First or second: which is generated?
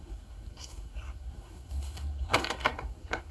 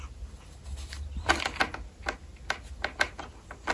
first